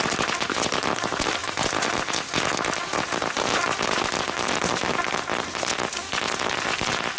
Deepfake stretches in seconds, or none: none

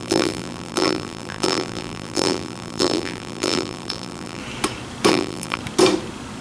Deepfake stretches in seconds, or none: 0.0-4.4 (vocoder, BigVGAN v2); 5.1-5.6

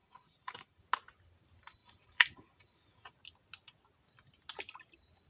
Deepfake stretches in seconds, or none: 0.0-0.8 (vocoder, Vocos); 1.8-3.1

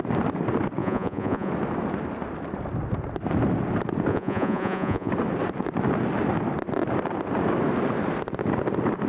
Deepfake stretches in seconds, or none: 0.8-1.5 (vocoder, Vocos); 4.1-5.1

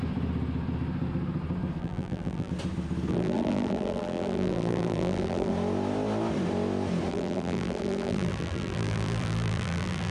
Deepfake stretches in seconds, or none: 1.8-2.5 (vocoder, BigVGAN v2); 3.1-5.5; 7.1-10.1

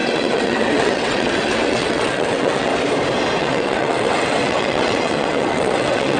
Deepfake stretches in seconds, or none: 0.0-2.7 (vocoder, WaveNeXt); 3.4-6.2

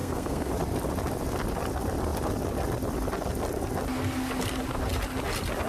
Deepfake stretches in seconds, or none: 0.0-0.5 (codec, SNAC)